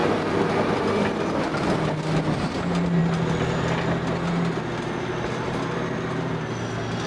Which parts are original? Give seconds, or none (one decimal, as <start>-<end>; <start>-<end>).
0.0-7.1